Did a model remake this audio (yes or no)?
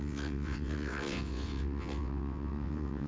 yes